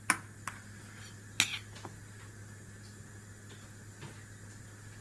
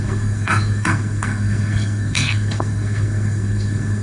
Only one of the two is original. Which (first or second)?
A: first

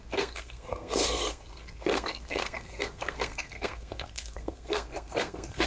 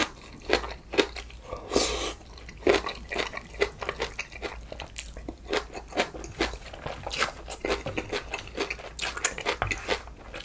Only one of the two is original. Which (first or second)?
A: second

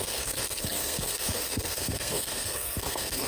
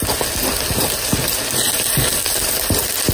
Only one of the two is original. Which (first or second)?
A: second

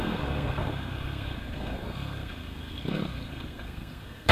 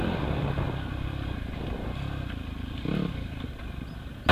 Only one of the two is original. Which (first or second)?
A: second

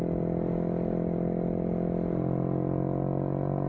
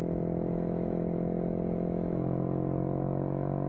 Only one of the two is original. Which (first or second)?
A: first